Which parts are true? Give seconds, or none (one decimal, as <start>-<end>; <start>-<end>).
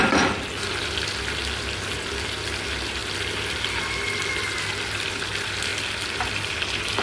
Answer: 0.0-7.0